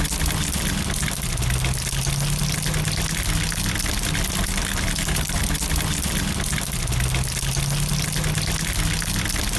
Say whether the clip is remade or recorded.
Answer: recorded